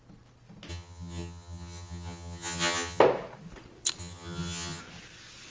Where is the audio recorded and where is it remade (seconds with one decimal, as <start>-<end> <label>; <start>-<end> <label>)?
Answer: 0.0-0.7 recorded; 0.7-3.0 remade; 3.0-4.0 recorded; 4.0-4.8 remade; 4.8-5.5 recorded